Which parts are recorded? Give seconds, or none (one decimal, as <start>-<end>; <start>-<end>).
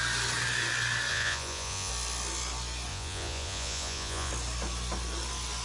0.0-1.1; 1.9-2.9; 4.3-5.6